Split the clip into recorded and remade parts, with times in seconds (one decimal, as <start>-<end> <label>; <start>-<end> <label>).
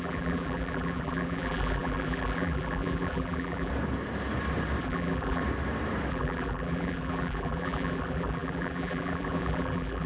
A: 0.0-3.7 remade; 3.7-4.8 recorded; 4.8-5.4 remade; 5.4-6.1 recorded; 6.1-10.1 remade